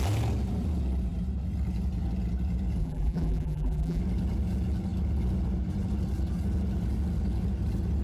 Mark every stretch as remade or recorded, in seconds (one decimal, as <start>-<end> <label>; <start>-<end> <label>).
0.0-2.8 recorded; 2.8-4.0 remade; 4.0-8.0 recorded